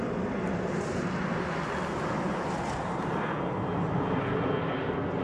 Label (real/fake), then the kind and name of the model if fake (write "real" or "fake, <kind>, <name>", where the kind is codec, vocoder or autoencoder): real